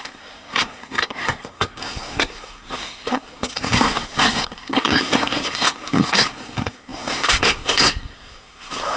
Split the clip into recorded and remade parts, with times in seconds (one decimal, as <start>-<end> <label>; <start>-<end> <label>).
0.0-9.0 remade

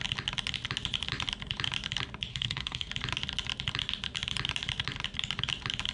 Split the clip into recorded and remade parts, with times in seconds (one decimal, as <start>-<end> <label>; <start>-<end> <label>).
0.0-2.3 recorded; 2.3-2.9 remade; 2.9-5.9 recorded

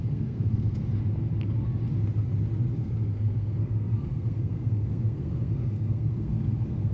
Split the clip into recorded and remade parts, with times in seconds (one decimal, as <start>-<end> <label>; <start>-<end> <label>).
0.0-0.8 remade; 0.8-2.8 recorded; 2.8-6.9 remade